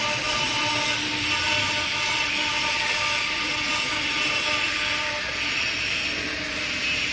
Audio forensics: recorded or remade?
remade